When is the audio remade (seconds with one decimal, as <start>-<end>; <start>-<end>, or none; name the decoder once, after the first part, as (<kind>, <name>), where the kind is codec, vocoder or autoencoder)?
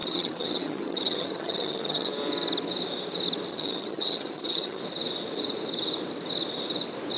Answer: 0.0-2.1 (vocoder, HiFi-GAN); 3.5-4.8